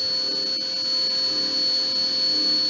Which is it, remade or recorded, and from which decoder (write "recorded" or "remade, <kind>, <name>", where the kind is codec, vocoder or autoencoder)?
recorded